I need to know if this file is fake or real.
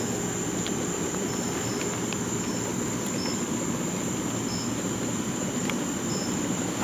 real